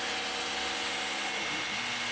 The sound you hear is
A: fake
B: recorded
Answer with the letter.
B